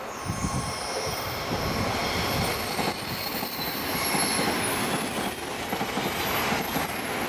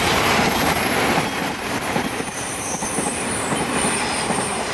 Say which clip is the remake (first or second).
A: second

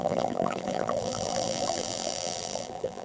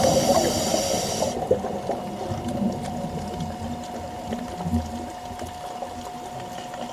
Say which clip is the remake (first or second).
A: first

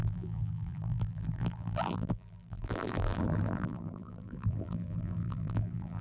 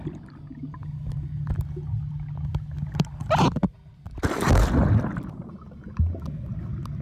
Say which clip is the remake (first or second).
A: first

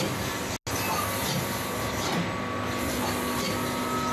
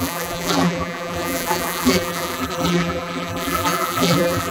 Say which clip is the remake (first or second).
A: second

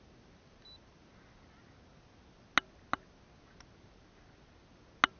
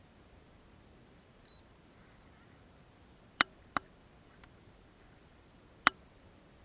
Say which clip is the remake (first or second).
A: second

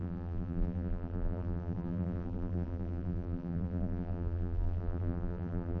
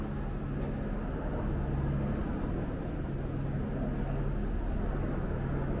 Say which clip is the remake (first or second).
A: first